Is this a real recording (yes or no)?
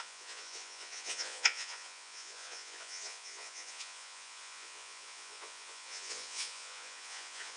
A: no